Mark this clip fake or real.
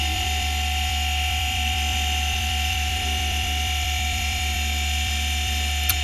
fake